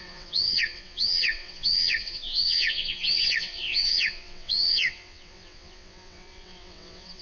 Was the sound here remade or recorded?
remade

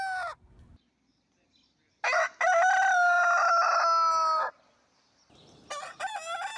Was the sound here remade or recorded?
recorded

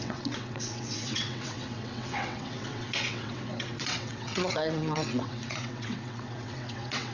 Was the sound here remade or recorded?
remade